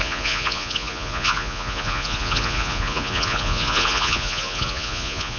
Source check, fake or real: fake